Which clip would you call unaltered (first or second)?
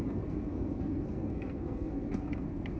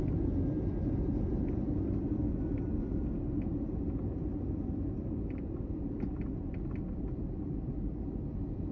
second